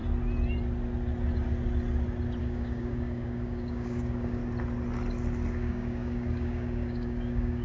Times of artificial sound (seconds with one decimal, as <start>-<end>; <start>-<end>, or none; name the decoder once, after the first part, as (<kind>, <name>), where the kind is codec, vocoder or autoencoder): 2.4-4.4 (codec, DAC); 5.5-7.6